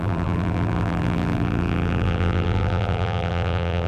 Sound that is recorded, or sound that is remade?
remade